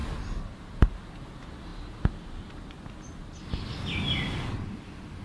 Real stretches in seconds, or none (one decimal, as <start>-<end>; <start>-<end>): 0.0-5.2